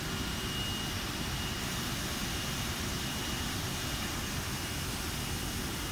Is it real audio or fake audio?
real